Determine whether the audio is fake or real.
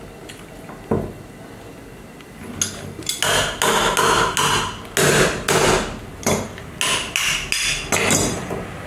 real